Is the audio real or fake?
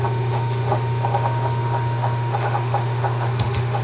fake